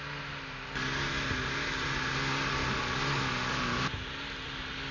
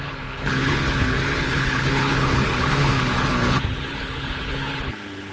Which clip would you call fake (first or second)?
second